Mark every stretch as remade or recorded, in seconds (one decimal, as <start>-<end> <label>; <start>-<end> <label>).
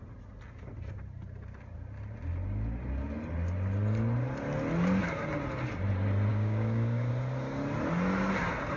0.0-6.3 recorded; 6.3-7.1 remade; 7.1-8.8 recorded